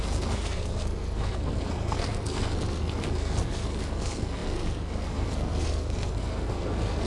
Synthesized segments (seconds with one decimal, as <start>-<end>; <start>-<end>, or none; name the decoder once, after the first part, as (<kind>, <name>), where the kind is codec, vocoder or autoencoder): 0.0-7.1 (codec, SNAC)